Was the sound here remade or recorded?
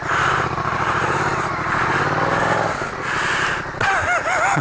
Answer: recorded